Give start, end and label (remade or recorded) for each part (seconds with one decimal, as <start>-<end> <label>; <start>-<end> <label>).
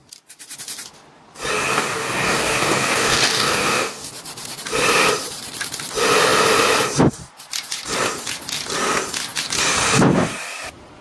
0.0-1.7 recorded; 1.7-4.1 remade; 4.1-11.0 recorded